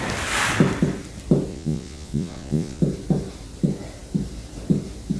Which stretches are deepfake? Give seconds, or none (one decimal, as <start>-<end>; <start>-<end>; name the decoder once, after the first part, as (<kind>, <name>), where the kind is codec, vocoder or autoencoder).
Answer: 1.5-2.8 (vocoder, Vocos)